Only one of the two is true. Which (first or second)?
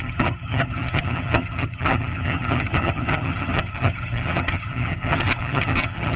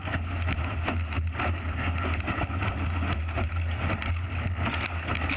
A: second